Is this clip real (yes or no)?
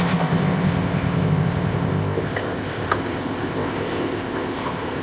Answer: no